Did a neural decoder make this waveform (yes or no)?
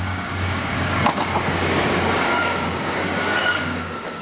yes